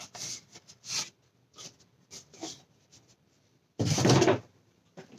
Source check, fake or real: real